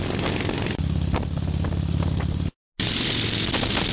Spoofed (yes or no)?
no